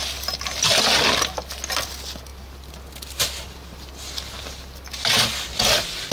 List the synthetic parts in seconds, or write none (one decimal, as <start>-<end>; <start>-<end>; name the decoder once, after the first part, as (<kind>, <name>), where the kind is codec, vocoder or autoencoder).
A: none